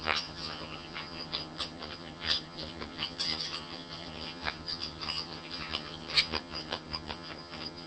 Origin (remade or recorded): remade